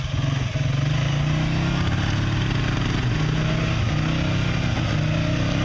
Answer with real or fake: real